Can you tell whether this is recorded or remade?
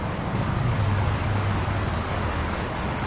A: remade